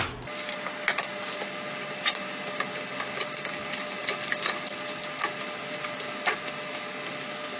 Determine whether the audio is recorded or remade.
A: recorded